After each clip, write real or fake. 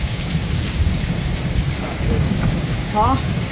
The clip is fake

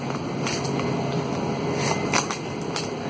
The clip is fake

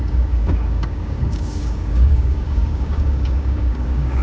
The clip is fake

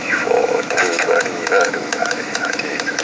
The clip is fake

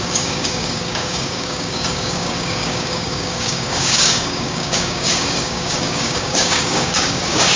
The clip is fake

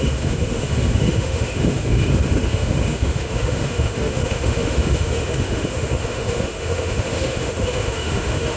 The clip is fake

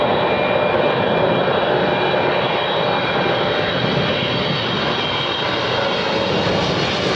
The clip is real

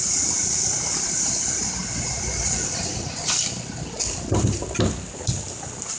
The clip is real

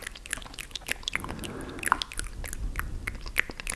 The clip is real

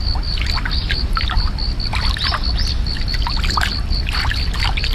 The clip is real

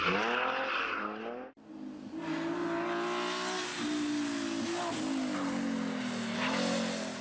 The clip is real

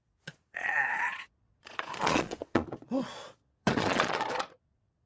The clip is fake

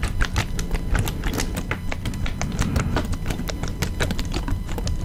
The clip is real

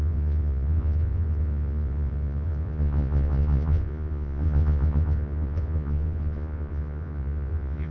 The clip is fake